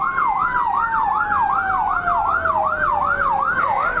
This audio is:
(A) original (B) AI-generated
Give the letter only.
A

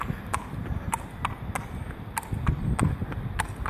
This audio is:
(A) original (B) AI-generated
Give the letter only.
A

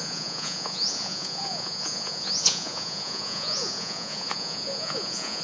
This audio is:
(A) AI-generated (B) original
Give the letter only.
A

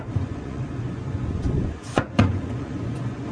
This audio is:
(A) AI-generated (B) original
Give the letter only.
A